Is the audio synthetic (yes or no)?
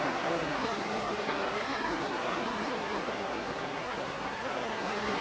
yes